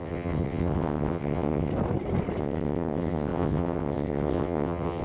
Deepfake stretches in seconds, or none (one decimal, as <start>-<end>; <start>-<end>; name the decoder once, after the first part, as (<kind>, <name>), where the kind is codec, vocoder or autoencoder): 0.0-1.7 (vocoder, WaveNeXt); 2.4-5.0